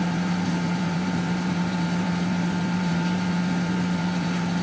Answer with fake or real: fake